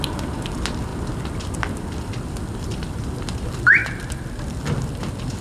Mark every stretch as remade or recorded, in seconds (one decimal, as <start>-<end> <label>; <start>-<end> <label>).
0.0-5.4 recorded

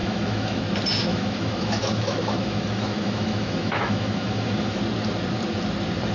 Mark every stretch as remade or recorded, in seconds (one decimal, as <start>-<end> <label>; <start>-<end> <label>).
0.0-0.6 remade; 0.6-1.1 recorded; 1.1-4.8 remade; 4.8-6.1 recorded

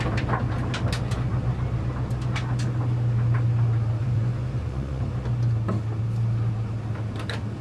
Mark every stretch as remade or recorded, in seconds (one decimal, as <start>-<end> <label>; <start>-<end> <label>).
0.0-4.0 recorded; 4.0-5.0 remade; 5.0-7.6 recorded

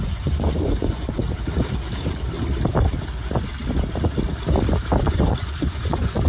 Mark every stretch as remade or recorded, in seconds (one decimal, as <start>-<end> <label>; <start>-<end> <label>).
0.0-1.2 remade; 1.2-5.0 recorded; 5.0-6.3 remade